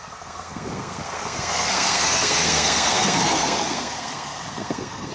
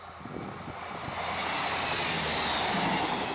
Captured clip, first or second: second